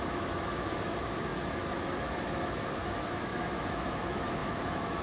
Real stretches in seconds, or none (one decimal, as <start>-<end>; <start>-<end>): none